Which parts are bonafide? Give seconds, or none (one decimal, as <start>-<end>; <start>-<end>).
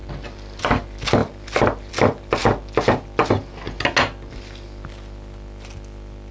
0.0-6.3